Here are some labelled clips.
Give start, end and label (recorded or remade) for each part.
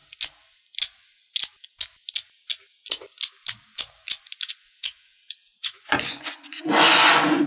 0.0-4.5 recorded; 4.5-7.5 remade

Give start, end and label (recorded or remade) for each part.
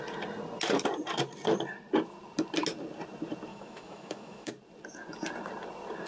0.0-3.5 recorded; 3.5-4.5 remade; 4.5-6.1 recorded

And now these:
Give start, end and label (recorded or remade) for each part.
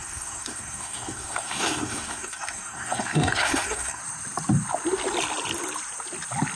0.0-4.0 remade; 4.0-6.6 recorded